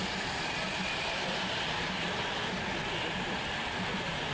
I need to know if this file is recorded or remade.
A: remade